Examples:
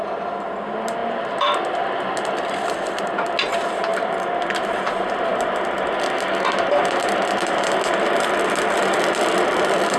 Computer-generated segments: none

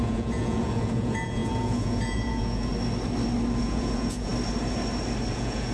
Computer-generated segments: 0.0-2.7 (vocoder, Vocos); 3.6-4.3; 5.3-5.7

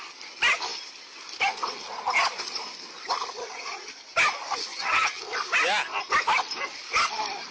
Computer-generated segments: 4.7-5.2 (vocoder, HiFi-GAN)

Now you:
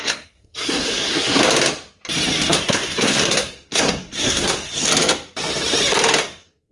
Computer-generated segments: 0.0-1.4 (codec, SNAC); 2.5-4.7; 6.2-6.7